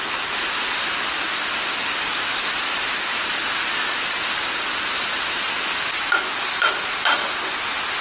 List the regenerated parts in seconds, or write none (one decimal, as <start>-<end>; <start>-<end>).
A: none